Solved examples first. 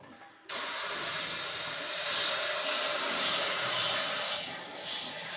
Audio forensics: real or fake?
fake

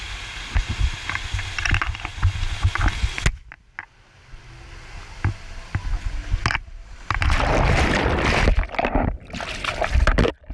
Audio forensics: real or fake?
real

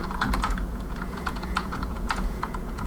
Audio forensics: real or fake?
fake